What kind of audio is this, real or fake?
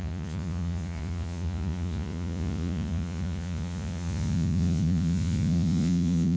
fake